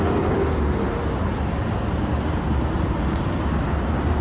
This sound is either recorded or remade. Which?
recorded